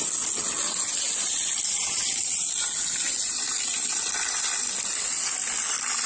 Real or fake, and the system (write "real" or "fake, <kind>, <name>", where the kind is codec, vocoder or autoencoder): real